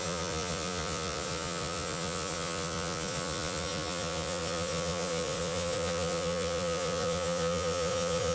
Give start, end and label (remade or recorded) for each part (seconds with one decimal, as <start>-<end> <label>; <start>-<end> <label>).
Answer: 0.0-8.3 remade